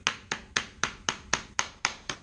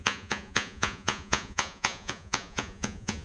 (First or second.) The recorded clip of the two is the first